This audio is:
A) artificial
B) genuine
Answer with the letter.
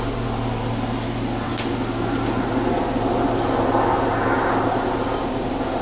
B